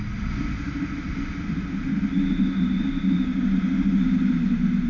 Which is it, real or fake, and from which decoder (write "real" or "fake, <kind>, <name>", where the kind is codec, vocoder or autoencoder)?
real